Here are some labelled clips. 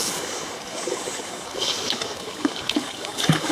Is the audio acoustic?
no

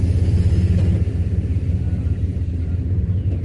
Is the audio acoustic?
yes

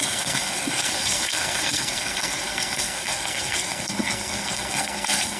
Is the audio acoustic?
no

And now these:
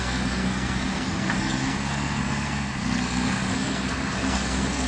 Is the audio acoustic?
no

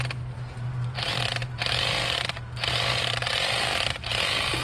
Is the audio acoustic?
yes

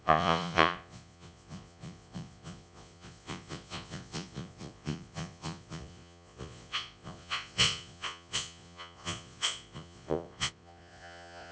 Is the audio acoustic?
no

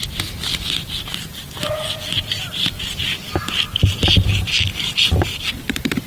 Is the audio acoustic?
no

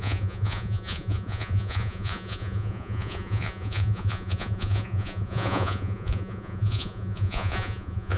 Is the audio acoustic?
no